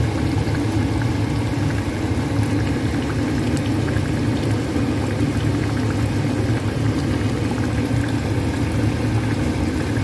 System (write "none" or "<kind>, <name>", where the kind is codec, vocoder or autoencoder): none